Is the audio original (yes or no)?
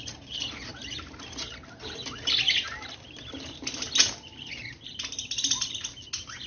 yes